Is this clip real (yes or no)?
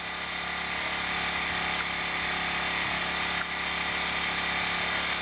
yes